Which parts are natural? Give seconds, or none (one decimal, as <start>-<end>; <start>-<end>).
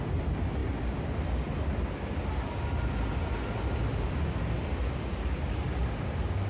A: 0.0-6.5